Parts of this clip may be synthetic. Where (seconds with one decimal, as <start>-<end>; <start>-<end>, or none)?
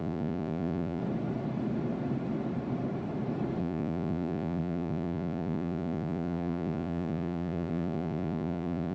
0.0-1.0; 3.6-8.9